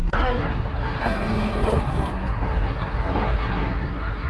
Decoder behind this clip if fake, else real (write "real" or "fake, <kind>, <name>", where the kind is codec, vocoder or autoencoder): fake, codec, SNAC